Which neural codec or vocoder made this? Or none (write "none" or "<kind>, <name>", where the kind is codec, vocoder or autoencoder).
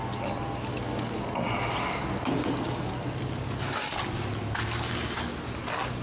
none